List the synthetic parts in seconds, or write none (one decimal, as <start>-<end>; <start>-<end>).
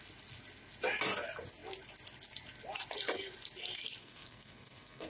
4.0-5.1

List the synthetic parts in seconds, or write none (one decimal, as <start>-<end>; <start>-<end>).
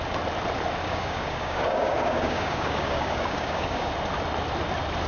0.8-3.9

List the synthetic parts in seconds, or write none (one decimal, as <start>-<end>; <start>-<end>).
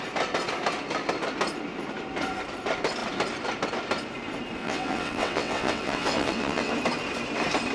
4.6-6.7